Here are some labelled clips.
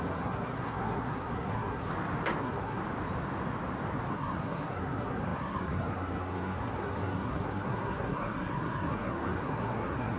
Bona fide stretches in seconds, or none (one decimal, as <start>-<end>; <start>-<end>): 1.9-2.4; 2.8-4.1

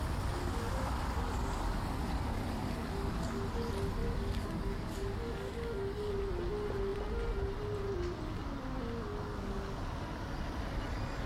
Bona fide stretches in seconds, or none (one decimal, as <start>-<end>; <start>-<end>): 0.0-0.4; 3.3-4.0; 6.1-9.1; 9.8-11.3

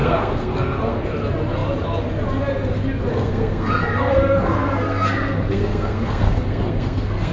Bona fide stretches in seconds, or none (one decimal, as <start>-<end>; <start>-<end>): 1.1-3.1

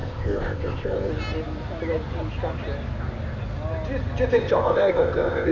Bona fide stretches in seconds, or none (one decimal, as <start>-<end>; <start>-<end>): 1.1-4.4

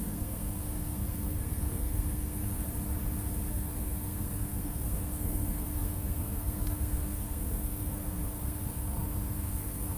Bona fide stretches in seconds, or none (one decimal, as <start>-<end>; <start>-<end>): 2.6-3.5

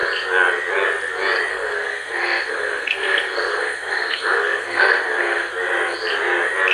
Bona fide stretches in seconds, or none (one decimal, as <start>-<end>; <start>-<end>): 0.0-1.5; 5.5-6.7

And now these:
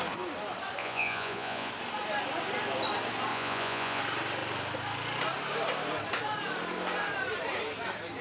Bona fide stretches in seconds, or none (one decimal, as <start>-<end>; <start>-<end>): 0.0-0.8; 1.7-3.3; 4.0-8.2